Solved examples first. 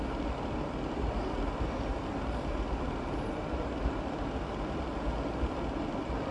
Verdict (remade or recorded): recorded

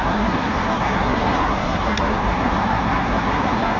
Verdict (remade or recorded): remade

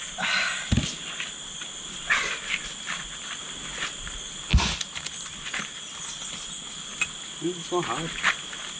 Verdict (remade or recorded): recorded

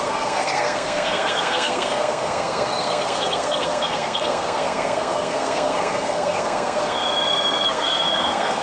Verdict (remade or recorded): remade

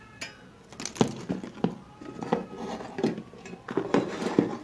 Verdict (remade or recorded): recorded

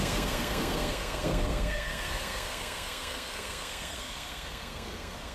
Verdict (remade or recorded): remade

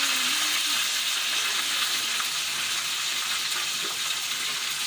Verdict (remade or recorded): recorded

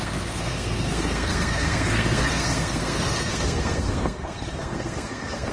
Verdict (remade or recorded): remade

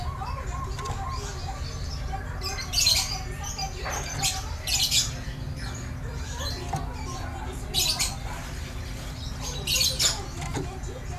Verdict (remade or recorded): recorded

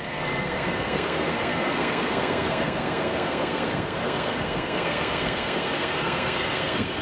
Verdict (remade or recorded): remade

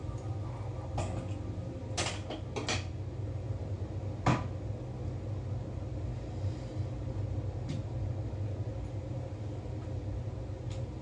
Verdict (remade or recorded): recorded